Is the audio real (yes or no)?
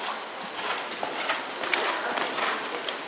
yes